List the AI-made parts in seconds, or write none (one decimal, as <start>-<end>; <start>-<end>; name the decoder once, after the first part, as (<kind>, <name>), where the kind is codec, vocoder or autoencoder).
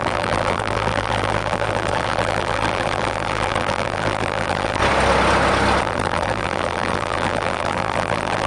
0.0-4.8 (vocoder, BigVGAN v2); 5.8-8.5